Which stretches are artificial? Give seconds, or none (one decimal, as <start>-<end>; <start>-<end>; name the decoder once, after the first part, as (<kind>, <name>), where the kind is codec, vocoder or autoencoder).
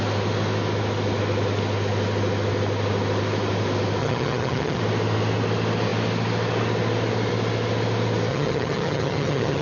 4.0-4.8 (vocoder, HiFi-GAN); 8.3-9.6